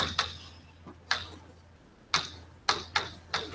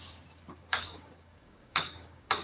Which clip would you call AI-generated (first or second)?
second